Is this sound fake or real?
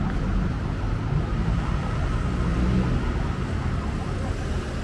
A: real